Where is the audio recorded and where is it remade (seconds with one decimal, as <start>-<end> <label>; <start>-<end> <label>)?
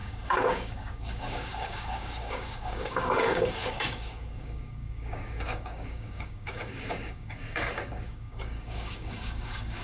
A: 0.0-9.8 remade